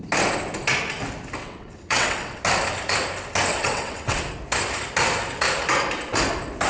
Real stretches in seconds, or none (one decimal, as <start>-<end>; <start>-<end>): 0.0-1.4; 2.4-3.5; 4.2-6.7